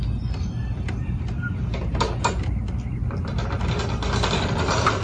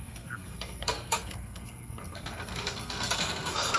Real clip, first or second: first